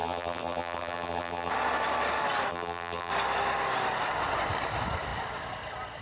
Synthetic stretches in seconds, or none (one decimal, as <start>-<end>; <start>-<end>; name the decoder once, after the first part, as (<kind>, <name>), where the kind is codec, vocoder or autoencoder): 0.0-1.5 (vocoder, BigVGAN v2); 2.5-3.1